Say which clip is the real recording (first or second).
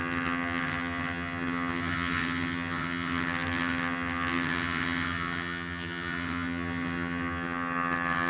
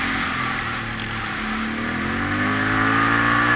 second